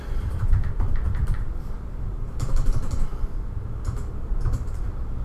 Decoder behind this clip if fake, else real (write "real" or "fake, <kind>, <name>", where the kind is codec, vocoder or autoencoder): fake, vocoder, BigVGAN v2